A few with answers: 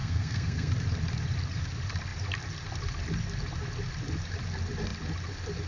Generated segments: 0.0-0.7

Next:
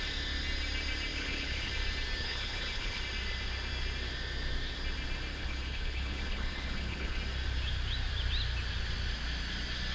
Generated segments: 1.1-1.7; 2.2-3.0; 5.3-7.2

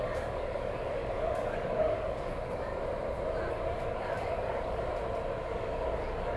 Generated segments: 0.0-2.7; 3.5-4.9; 5.4-6.4

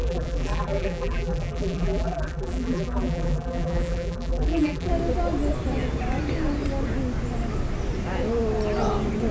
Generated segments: 0.0-4.9

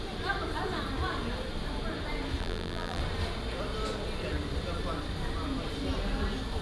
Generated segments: 2.4-3.0

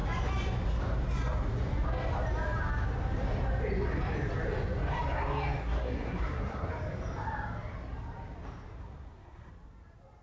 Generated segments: 5.6-6.7; 8.8-9.5